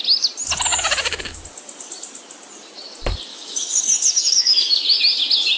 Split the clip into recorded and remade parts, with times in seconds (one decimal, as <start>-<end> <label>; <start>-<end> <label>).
0.0-0.7 recorded; 0.7-1.4 remade; 1.4-3.3 recorded; 3.3-5.0 remade; 5.0-5.6 recorded